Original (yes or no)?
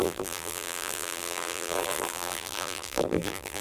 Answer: no